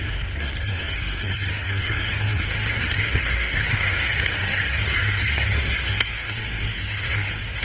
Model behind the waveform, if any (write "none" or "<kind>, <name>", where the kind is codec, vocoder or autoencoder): codec, SNAC